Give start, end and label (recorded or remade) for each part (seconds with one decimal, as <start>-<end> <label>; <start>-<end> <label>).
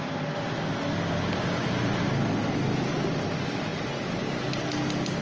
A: 0.0-5.2 recorded